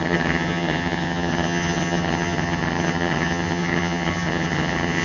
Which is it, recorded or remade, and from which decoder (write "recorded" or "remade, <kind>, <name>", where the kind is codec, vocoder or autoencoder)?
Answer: remade, vocoder, HiFi-GAN